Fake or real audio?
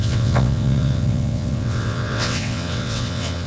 fake